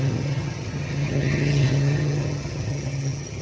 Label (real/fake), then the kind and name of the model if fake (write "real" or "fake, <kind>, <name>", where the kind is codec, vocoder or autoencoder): fake, vocoder, HiFi-GAN